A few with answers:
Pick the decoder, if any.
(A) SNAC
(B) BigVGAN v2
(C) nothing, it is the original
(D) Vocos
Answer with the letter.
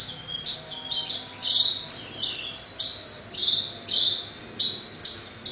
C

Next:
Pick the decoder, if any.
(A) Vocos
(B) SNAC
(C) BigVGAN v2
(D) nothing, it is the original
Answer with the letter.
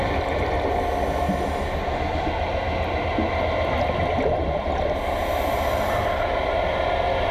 D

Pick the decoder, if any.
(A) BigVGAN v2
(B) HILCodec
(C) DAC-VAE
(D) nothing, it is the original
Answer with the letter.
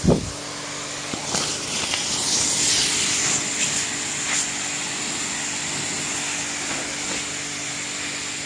D